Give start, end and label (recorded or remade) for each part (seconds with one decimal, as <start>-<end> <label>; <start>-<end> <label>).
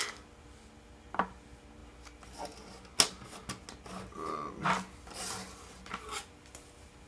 0.0-7.1 recorded